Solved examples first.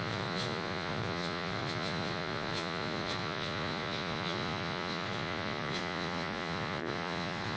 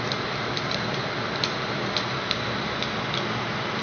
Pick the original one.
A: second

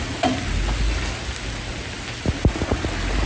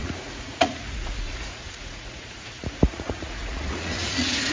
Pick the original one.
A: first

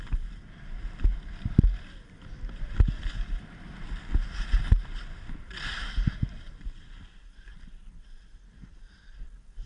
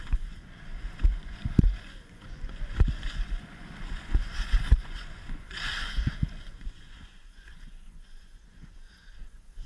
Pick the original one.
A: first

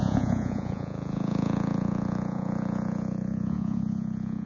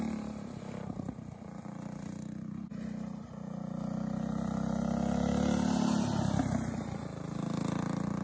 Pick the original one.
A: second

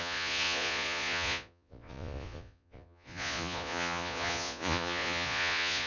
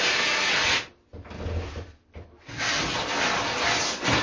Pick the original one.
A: second